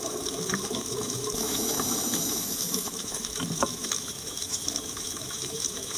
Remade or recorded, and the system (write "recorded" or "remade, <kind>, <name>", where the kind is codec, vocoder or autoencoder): remade, autoencoder, DAC-VAE